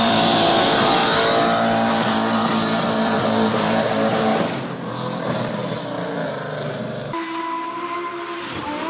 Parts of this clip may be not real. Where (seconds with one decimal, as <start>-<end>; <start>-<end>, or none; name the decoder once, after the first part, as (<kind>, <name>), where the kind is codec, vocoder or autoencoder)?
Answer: 0.0-1.0 (vocoder, BigVGAN v2); 1.9-8.9